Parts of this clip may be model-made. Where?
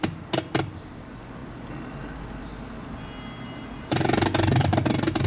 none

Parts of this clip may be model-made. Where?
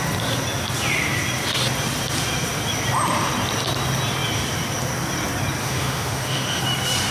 5.6-6.6 (autoencoder, DAC-VAE)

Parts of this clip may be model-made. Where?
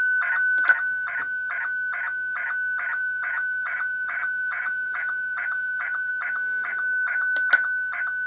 3.0-6.1 (vocoder, Vocos)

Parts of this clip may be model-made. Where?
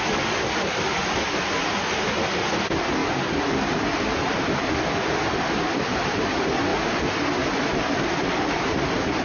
none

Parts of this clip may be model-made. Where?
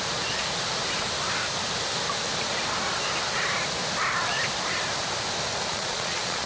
5.7-6.5 (vocoder, Vocos)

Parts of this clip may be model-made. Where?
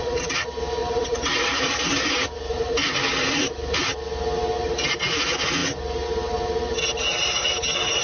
0.8-2.7 (vocoder, BigVGAN v2)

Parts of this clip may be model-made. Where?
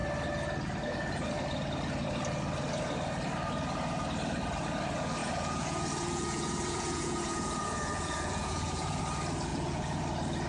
5.2-9.0 (vocoder, Vocos); 9.5-10.0